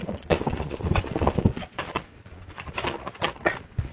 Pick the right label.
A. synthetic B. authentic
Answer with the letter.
A